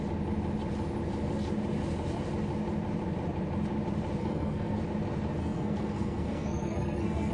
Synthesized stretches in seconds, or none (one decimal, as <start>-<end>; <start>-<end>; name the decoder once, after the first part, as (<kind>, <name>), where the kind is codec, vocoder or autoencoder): 4.2-4.8 (codec, SNAC); 5.4-7.3